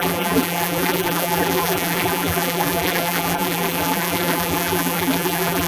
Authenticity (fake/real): fake